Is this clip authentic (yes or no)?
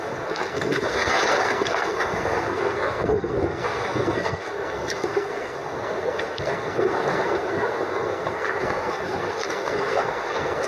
no